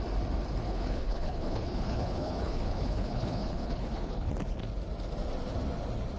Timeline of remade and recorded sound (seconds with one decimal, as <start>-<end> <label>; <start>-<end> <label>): 0.0-0.6 recorded; 0.6-4.3 remade; 4.3-6.2 recorded